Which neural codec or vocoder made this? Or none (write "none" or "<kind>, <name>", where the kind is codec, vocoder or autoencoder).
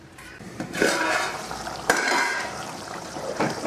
vocoder, BigVGAN v2